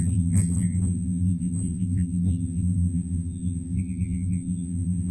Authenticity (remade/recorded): remade